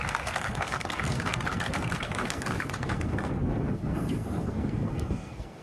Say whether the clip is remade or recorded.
remade